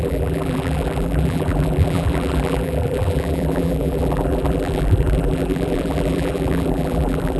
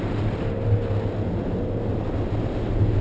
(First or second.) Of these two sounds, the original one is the second